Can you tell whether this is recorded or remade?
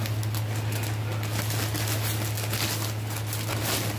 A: recorded